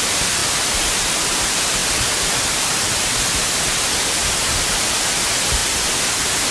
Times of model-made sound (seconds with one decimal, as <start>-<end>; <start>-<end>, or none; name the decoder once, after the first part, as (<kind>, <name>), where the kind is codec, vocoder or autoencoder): none